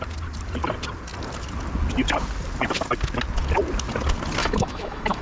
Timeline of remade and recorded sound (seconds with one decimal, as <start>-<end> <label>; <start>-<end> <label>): 0.0-4.4 recorded; 4.4-5.2 remade